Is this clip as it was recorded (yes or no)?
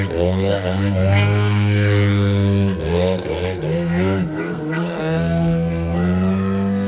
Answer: no